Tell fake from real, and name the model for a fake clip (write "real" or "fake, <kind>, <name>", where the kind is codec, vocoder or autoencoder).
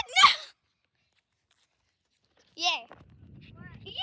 real